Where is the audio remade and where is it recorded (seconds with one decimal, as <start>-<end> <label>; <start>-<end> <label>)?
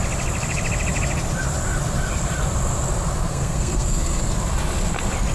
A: 0.0-3.3 recorded; 3.3-4.2 remade; 4.2-5.3 recorded